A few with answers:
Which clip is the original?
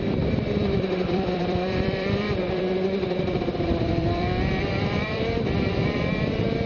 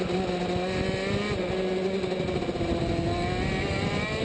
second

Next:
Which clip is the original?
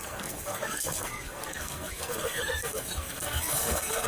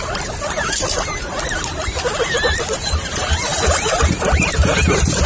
second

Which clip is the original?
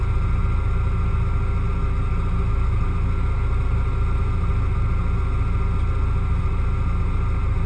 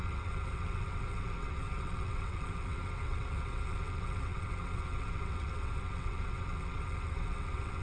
first